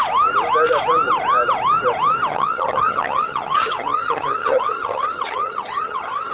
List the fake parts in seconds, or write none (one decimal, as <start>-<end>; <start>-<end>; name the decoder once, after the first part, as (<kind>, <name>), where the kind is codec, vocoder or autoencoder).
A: 2.3-6.3 (vocoder, HiFi-GAN)

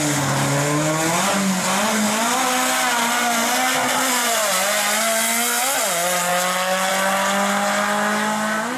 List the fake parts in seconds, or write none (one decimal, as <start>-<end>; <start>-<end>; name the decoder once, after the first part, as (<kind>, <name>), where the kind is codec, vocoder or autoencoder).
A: none

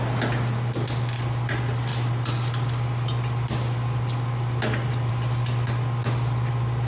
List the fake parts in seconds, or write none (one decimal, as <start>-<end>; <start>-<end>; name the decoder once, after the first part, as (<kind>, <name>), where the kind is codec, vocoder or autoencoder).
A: none

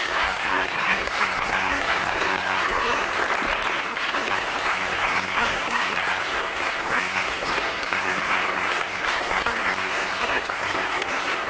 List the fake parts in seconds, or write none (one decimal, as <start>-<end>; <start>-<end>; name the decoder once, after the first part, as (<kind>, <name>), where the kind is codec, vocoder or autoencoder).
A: 0.0-3.1 (codec, SNAC); 3.8-11.5

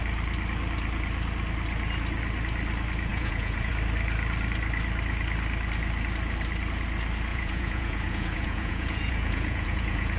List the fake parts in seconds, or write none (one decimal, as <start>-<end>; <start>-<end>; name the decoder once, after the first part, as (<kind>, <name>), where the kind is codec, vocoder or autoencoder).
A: 3.1-3.7 (vocoder, Vocos); 7.3-10.2